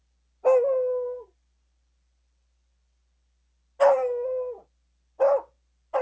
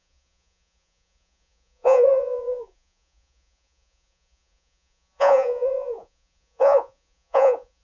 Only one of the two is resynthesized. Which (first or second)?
second